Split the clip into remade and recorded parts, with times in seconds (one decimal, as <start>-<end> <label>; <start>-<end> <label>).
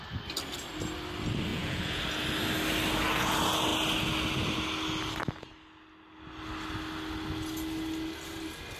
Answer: 0.0-1.5 recorded; 1.5-2.0 remade; 2.0-8.8 recorded